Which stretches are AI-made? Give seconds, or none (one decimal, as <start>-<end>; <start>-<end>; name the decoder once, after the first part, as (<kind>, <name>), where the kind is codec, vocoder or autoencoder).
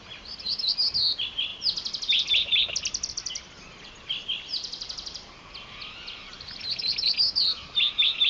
none